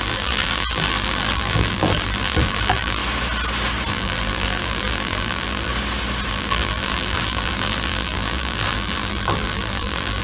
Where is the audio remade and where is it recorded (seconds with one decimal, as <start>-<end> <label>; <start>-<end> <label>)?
0.0-3.0 remade; 3.0-3.9 recorded; 3.9-5.7 remade; 5.7-6.3 recorded; 6.3-10.2 remade